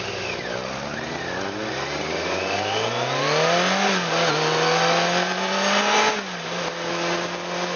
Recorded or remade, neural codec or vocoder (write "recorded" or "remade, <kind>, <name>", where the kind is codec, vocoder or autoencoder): recorded